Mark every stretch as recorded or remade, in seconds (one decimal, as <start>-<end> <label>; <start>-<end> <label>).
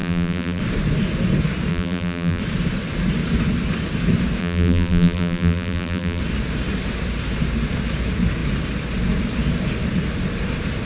0.0-0.6 remade; 0.6-1.7 recorded; 1.7-2.4 remade; 2.4-4.4 recorded; 4.4-6.2 remade; 6.2-10.9 recorded